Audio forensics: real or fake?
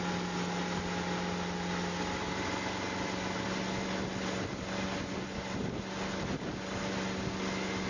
real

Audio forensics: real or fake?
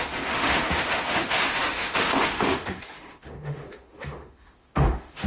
fake